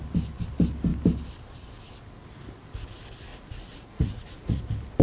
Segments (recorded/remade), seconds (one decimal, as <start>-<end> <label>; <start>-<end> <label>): 0.0-3.3 recorded; 3.3-4.6 remade; 4.6-5.0 recorded